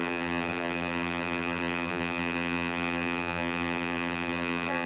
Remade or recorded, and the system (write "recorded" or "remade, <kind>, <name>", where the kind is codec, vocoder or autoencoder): remade, vocoder, BigVGAN v2